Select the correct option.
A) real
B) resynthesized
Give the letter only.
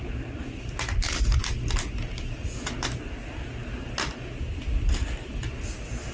A